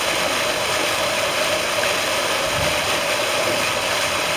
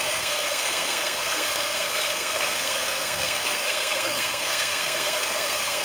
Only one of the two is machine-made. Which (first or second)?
second